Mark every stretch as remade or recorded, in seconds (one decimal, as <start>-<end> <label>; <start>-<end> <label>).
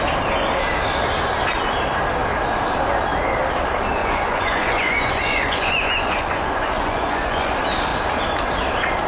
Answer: 0.0-4.0 recorded; 4.0-7.5 remade; 7.5-9.1 recorded